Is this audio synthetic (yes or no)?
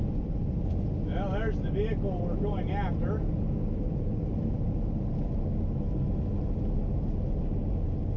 no